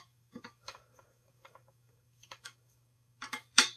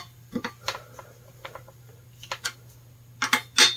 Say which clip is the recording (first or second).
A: second